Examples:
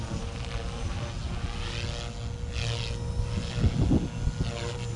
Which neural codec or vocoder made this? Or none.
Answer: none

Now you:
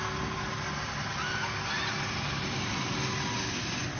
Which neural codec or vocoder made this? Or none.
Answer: none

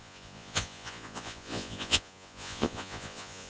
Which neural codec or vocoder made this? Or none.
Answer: vocoder, Vocos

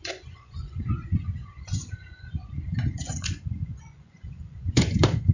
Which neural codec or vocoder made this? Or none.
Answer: vocoder, Vocos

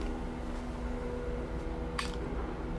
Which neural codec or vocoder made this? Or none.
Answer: none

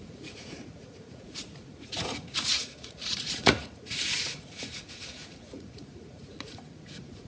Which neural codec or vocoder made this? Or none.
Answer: vocoder, Vocos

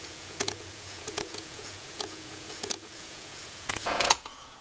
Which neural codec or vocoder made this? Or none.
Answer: vocoder, Vocos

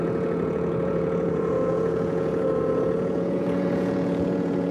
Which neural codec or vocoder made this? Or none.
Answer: vocoder, Vocos